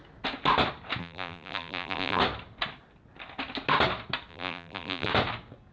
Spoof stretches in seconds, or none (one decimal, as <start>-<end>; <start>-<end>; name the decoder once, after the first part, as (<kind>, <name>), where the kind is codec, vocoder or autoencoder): 1.0-2.2 (vocoder, BigVGAN v2); 4.3-5.1